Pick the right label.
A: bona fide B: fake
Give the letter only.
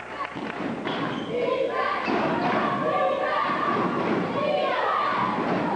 A